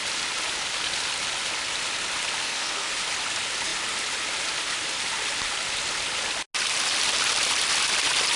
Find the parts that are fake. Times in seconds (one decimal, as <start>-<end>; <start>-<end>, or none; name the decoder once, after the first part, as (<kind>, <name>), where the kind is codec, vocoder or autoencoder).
2.4-2.9 (codec, SNAC)